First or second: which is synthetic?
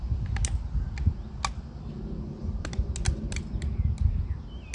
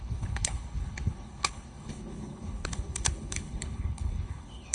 second